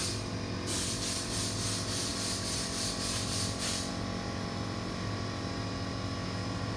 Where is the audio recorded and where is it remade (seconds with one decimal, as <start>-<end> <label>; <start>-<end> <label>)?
0.0-2.1 recorded; 2.1-3.9 remade; 3.9-6.8 recorded

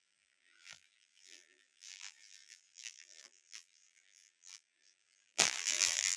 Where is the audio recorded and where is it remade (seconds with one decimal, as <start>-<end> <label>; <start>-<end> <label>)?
0.0-6.2 remade